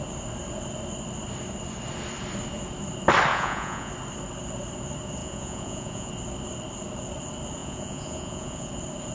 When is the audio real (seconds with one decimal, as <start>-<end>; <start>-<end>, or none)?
0.0-3.3; 3.9-5.2; 6.1-7.6; 8.7-9.1